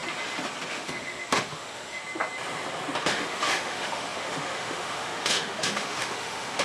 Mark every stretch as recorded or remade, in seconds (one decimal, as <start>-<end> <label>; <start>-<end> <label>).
0.0-0.7 recorded; 0.7-2.0 remade; 2.0-3.0 recorded; 3.0-6.6 remade